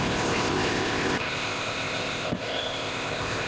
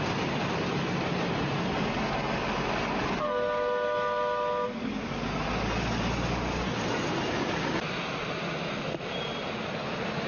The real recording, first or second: second